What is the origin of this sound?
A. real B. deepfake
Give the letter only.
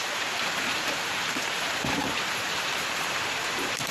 B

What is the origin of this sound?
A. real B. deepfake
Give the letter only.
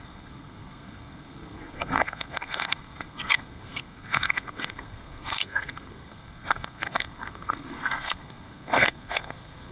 B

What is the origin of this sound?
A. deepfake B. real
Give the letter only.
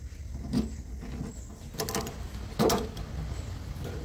B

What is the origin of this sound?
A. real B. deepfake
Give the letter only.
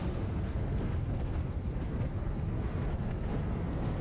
B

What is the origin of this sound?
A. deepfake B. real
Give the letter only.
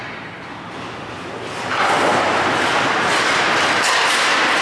B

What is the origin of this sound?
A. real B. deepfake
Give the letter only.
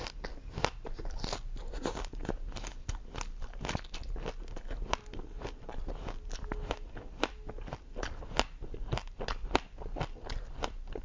A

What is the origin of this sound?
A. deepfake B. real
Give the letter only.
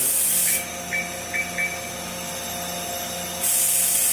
B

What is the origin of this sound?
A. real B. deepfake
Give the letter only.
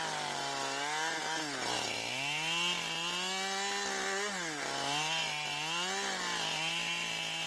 A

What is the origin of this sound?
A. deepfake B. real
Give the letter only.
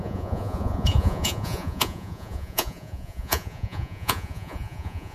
A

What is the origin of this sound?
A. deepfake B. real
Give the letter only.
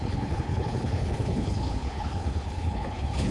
A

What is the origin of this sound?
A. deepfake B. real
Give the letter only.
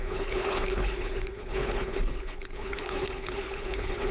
A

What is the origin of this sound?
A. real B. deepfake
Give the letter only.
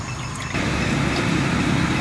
A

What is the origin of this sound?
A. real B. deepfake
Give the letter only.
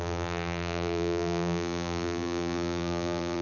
B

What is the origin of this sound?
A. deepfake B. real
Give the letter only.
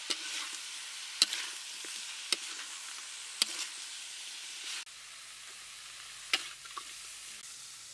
B